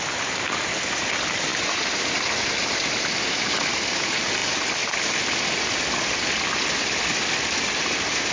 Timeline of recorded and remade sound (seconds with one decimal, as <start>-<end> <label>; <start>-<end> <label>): 0.0-8.3 recorded